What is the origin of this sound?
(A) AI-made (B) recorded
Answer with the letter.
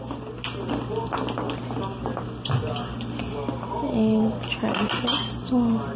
A